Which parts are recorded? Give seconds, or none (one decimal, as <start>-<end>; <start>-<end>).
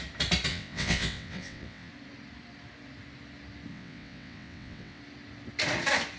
0.0-0.5; 1.9-3.7; 5.0-6.2